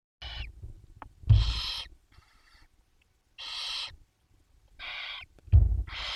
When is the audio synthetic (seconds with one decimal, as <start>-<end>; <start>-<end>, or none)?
none

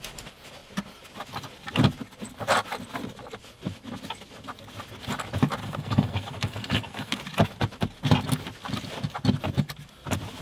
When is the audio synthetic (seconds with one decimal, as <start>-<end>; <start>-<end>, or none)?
5.6-7.2

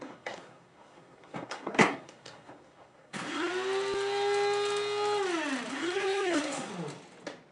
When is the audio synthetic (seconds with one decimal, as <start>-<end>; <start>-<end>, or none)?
0.0-3.5; 5.7-6.7